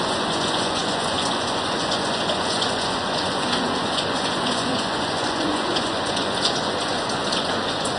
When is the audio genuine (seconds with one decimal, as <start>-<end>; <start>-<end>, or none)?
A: none